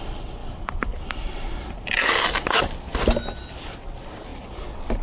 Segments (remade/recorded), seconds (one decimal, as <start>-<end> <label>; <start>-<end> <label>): 0.0-0.4 recorded; 0.4-2.5 remade; 2.5-5.0 recorded